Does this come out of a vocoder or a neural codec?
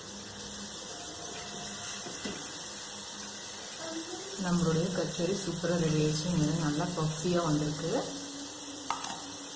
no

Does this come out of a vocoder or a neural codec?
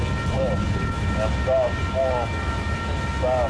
no